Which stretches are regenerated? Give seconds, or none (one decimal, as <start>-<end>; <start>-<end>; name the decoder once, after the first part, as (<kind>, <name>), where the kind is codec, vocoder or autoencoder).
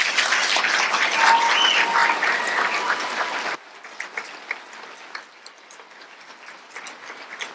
none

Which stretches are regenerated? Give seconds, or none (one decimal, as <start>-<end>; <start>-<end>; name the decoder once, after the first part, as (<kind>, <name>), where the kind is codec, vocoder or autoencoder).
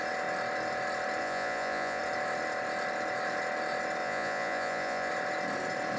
1.2-2.0 (vocoder, Vocos); 4.0-5.1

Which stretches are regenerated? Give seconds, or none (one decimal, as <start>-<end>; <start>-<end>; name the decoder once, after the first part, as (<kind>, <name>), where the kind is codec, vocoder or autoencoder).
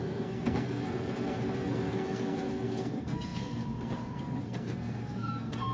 0.0-5.7 (codec, SNAC)